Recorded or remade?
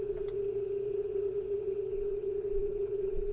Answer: remade